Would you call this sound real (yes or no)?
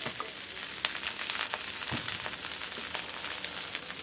yes